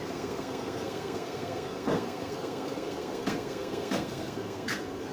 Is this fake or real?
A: fake